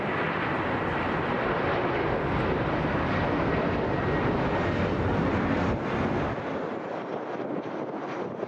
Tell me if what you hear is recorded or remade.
recorded